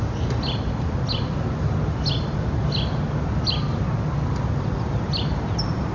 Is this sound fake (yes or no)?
no